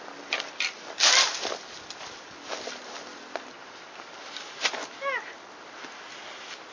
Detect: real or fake real